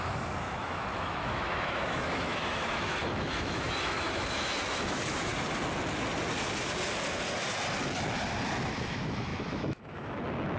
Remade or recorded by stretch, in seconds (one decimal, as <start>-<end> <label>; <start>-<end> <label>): 0.0-5.3 remade; 5.3-8.7 recorded; 8.7-10.6 remade